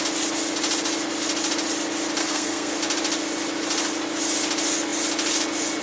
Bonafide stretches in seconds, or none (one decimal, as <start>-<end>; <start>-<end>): 0.0-2.2; 2.7-5.8